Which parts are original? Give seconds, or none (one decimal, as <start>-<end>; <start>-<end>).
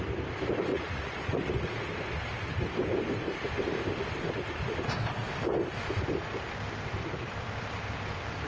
0.0-0.7; 1.9-8.5